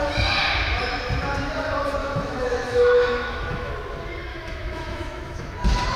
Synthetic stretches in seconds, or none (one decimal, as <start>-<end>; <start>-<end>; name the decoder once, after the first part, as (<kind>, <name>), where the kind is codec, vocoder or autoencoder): 2.0-3.7 (autoencoder, DAC-VAE); 4.3-5.5